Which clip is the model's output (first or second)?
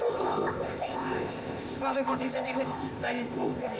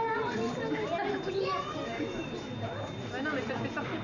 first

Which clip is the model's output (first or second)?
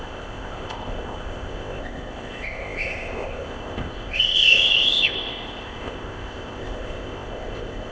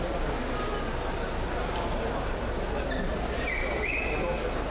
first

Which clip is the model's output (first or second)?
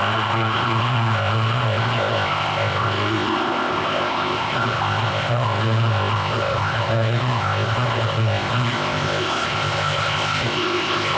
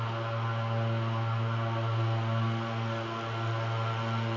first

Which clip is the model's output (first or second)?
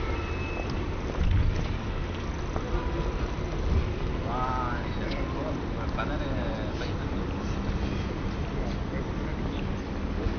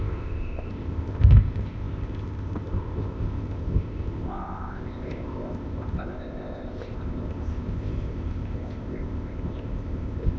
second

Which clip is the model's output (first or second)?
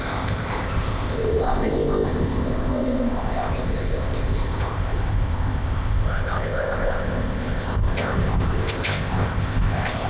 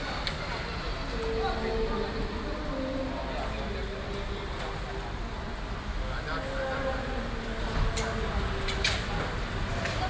first